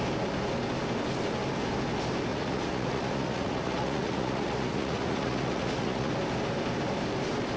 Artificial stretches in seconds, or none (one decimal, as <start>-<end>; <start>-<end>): 2.3-6.1